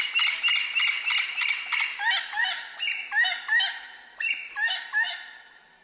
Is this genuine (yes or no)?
yes